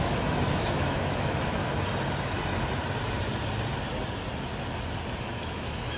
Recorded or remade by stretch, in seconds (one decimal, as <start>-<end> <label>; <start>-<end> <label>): 0.0-1.6 remade; 1.6-5.2 recorded; 5.2-6.0 remade